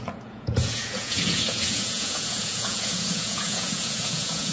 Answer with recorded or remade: remade